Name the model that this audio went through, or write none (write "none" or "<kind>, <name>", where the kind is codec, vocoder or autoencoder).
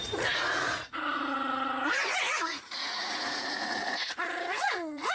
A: vocoder, Vocos